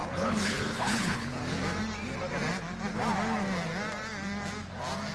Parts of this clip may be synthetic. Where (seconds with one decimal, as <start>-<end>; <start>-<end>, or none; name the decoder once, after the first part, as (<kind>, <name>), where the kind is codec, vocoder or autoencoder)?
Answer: 0.0-1.4 (codec, HILCodec)